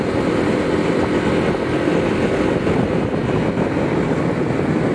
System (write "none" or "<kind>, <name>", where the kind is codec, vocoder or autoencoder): none